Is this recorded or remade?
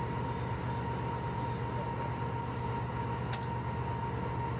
recorded